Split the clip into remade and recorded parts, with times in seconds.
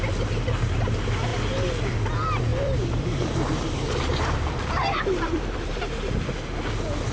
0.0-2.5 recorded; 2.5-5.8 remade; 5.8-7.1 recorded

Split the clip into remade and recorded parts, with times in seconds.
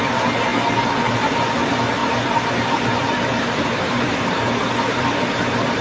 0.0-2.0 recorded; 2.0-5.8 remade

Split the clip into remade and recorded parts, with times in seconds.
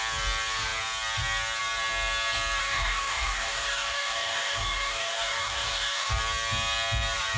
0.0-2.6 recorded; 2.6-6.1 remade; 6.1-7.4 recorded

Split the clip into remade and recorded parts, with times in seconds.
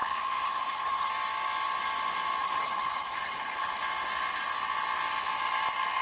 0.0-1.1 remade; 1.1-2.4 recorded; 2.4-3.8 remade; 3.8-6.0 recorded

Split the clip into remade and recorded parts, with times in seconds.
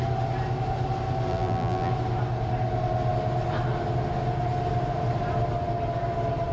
0.0-1.3 recorded; 1.3-1.9 remade; 1.9-6.5 recorded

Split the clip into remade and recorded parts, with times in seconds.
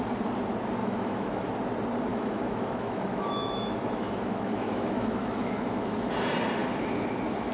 0.0-0.8 recorded; 0.8-1.5 remade; 1.5-2.1 recorded; 2.1-6.1 remade; 6.1-7.5 recorded